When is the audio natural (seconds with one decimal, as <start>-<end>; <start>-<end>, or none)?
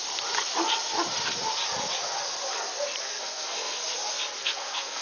0.0-3.0; 3.8-4.4